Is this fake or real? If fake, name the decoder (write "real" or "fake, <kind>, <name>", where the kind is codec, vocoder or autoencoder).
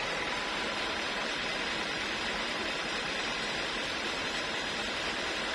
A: fake, vocoder, BigVGAN v2